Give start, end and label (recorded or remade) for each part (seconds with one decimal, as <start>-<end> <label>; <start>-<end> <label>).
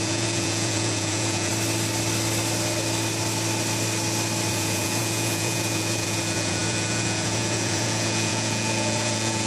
0.0-1.5 remade; 1.5-4.5 recorded; 4.5-9.5 remade